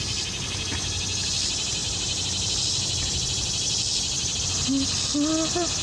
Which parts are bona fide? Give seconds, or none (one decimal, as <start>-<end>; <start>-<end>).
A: 0.0-5.8